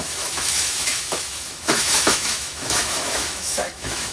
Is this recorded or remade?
remade